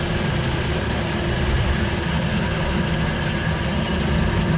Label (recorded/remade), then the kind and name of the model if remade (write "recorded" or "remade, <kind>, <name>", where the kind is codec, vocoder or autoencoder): recorded